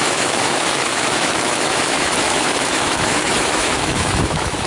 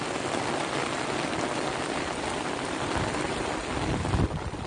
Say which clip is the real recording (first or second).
second